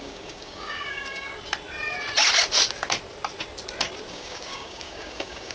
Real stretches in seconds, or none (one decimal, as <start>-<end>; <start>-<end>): 1.3-4.1